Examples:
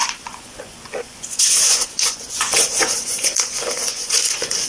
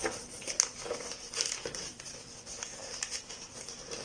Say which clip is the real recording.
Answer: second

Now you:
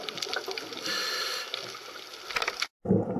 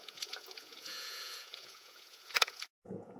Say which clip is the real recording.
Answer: first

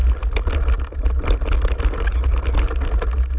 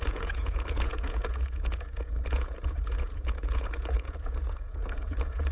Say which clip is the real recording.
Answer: first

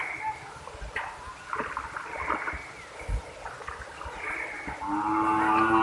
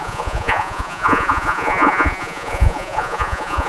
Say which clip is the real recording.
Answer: first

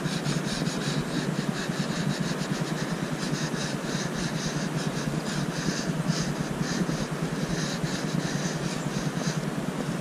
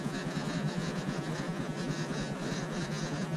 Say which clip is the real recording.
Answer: first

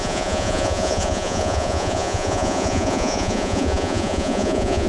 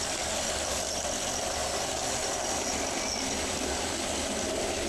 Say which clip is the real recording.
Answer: second